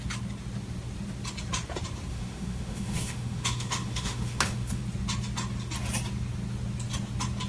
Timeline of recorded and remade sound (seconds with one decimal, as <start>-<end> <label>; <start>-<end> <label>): 0.0-2.1 recorded; 2.1-4.8 remade; 4.8-7.5 recorded